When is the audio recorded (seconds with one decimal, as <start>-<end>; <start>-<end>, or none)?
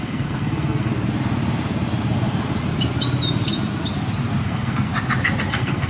0.9-4.4; 4.9-5.5